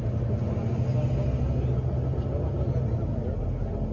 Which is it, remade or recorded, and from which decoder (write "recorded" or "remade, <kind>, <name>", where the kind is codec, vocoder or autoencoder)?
recorded